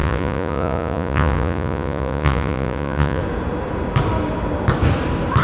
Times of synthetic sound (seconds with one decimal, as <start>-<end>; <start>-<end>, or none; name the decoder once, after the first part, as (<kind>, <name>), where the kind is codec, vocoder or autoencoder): 0.0-3.2 (vocoder, Vocos)